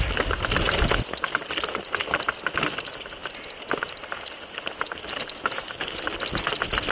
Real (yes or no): yes